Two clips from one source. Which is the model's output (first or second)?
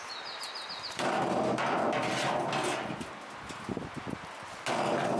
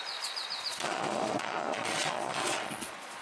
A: second